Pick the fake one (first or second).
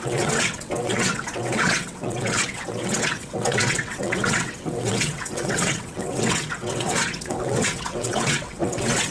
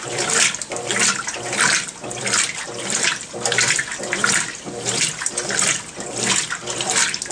first